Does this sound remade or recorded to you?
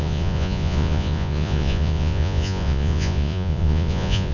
remade